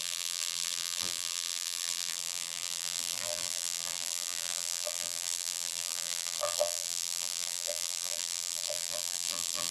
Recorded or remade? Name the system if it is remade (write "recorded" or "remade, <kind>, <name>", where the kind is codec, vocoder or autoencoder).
remade, vocoder, BigVGAN v2